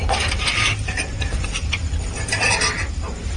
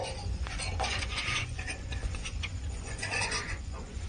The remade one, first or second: second